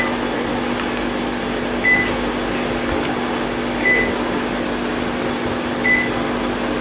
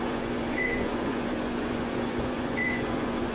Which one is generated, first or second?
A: second